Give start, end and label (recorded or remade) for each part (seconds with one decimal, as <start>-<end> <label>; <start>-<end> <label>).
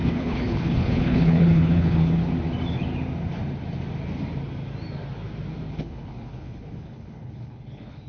0.0-2.2 remade; 2.2-5.7 recorded; 5.7-8.1 remade